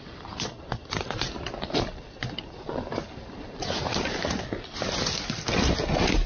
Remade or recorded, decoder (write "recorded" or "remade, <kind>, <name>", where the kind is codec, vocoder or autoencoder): recorded